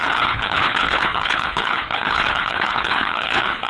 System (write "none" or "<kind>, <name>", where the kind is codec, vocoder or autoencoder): codec, HILCodec